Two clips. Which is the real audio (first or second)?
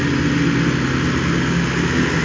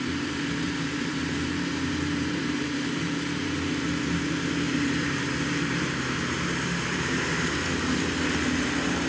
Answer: first